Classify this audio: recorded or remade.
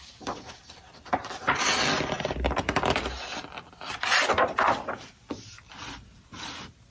recorded